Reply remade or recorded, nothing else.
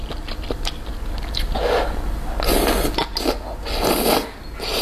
recorded